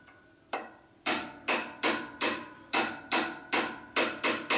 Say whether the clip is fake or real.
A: fake